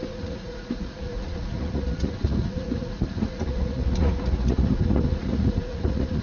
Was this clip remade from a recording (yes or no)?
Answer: yes